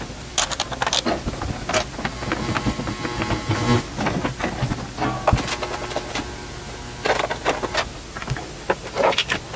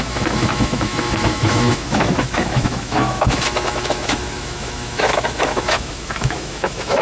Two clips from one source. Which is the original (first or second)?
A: first